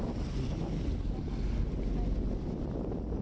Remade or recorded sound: recorded